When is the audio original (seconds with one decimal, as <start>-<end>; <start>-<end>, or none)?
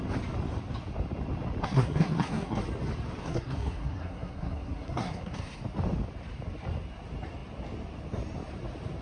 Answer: 0.0-1.6; 2.6-3.2; 5.6-9.0